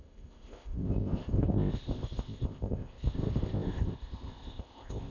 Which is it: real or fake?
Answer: fake